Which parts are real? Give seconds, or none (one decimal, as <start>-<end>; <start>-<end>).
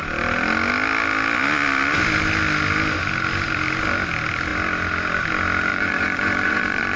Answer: 0.0-5.7